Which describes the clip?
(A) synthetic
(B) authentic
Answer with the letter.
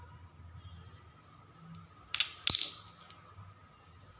B